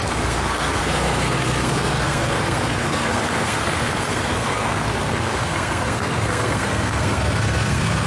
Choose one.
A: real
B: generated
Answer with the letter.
B